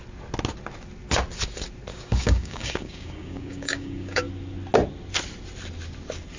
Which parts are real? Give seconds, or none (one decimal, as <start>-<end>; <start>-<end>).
0.0-1.9; 4.3-6.4